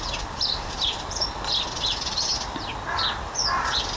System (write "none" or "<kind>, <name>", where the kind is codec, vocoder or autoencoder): vocoder, BigVGAN v2